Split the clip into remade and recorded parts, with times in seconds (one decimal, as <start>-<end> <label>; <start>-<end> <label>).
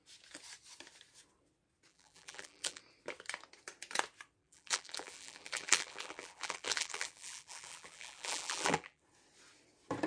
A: 0.0-1.9 recorded; 1.9-2.8 remade; 2.8-4.4 recorded; 4.4-9.0 remade; 9.0-10.1 recorded